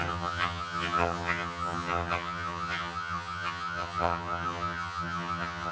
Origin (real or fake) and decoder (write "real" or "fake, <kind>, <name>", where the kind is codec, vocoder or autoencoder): fake, vocoder, HiFi-GAN